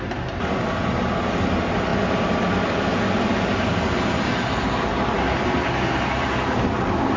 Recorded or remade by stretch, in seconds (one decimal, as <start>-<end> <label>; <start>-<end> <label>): 0.0-7.2 recorded